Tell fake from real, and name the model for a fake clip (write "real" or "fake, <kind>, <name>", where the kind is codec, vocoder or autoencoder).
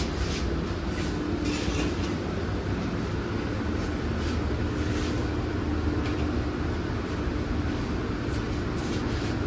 real